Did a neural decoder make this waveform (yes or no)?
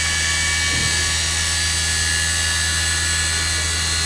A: no